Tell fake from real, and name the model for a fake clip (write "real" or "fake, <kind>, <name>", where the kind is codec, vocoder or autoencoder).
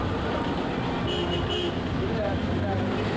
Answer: real